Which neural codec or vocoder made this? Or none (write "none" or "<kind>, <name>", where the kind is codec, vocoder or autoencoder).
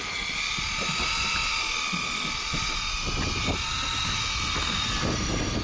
none